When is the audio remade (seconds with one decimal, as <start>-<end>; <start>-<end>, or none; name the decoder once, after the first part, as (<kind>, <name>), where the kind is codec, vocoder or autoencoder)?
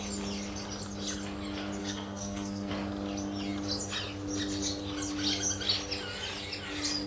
1.8-2.7 (codec, SNAC)